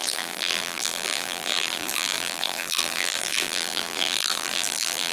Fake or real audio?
fake